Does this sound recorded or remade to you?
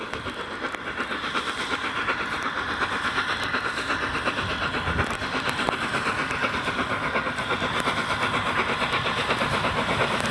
recorded